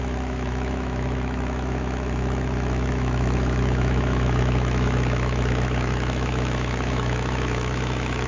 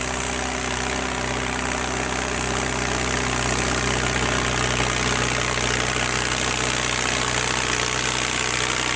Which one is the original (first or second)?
second